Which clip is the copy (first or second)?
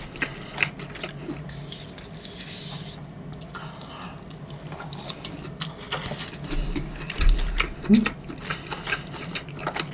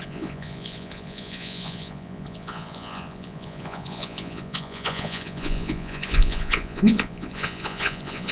second